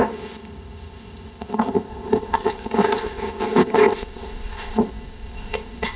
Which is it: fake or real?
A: fake